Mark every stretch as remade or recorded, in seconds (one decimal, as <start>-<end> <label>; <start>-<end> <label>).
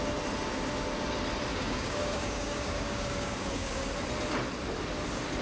0.0-1.5 recorded; 1.5-3.9 remade; 3.9-5.4 recorded